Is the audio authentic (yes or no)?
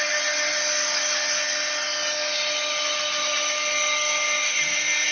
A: yes